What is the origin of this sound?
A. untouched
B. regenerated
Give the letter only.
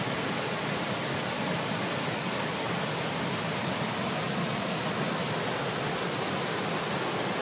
A